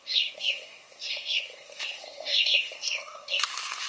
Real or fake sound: fake